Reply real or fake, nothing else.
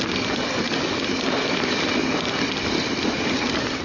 real